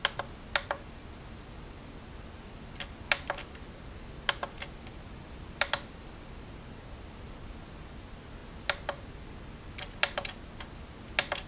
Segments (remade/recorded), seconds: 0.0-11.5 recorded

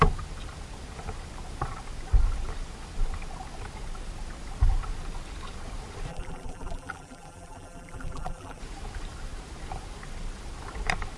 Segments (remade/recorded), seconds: 0.0-6.1 recorded; 6.1-8.6 remade; 8.6-11.2 recorded

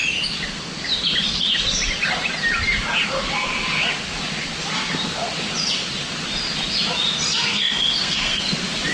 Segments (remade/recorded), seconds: 0.0-7.4 recorded; 7.4-8.5 remade; 8.5-8.9 recorded

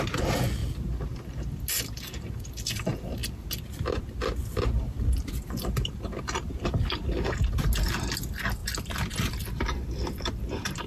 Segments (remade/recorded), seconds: 0.0-8.6 recorded; 8.6-10.4 remade; 10.4-10.9 recorded

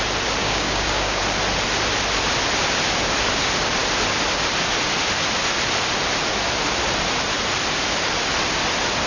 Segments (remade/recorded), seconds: 0.0-0.4 recorded; 0.4-1.2 remade; 1.2-9.1 recorded

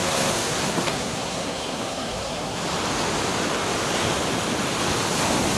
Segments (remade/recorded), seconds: 0.0-2.6 remade; 2.6-5.6 recorded

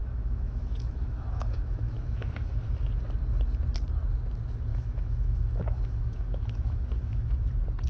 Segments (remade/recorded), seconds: 0.0-2.9 remade; 2.9-4.7 recorded; 4.7-7.5 remade; 7.5-7.9 recorded